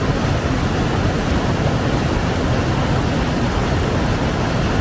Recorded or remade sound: recorded